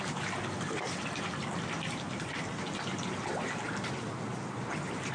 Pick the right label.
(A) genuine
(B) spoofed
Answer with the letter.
A